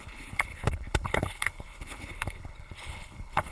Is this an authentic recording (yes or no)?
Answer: no